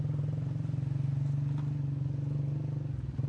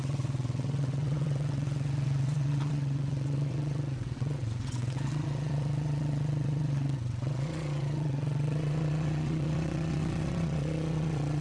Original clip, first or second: first